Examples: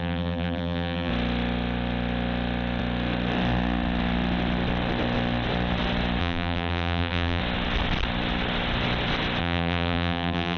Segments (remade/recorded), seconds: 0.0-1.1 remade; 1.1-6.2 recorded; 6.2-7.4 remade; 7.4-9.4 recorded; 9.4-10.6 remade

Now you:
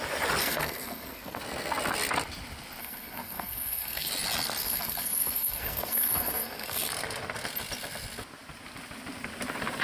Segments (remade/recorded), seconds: 0.0-0.4 recorded; 0.4-1.4 remade; 1.4-2.8 recorded; 2.8-4.1 remade; 4.1-4.6 recorded; 4.6-6.9 remade; 6.9-9.8 recorded

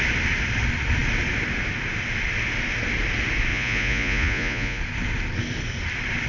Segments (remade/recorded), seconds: 0.0-3.5 recorded; 3.5-4.8 remade; 4.8-6.3 recorded